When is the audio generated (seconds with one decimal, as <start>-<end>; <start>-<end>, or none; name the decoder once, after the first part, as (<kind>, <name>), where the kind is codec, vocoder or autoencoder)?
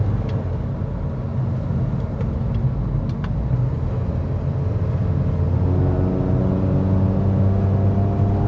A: none